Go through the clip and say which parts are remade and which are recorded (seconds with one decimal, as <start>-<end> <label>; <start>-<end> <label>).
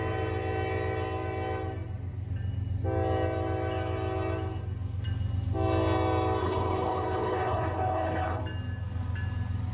0.0-6.4 recorded; 6.4-8.4 remade; 8.4-9.7 recorded